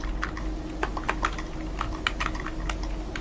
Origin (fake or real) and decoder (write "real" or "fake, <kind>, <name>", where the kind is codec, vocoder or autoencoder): real